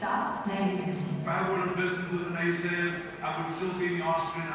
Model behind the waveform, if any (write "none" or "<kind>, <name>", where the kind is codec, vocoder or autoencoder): none